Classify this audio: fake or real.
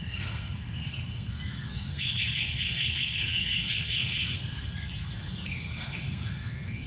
fake